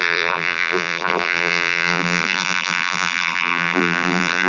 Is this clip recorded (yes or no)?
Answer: no